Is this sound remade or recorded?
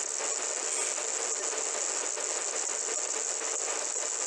recorded